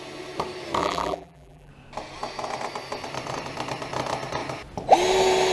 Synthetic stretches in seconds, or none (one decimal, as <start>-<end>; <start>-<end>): 0.8-1.7